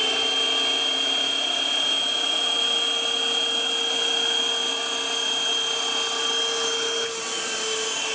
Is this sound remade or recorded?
recorded